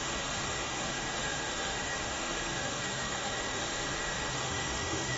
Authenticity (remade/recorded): remade